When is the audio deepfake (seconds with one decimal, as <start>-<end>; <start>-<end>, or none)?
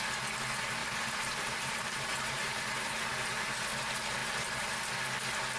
0.8-3.0